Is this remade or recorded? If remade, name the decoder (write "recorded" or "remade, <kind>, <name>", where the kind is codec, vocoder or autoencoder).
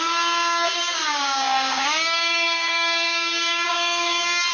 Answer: remade, codec, DAC